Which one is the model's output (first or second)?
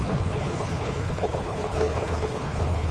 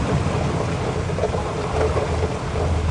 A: first